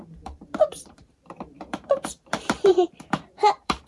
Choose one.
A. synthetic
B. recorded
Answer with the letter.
A